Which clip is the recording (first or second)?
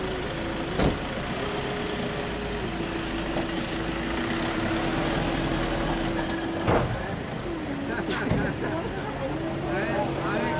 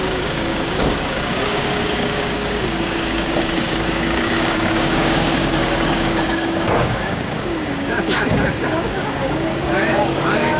first